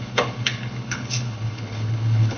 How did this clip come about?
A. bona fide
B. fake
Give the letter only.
B